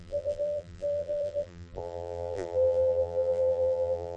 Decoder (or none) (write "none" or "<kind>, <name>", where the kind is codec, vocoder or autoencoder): vocoder, BigVGAN v2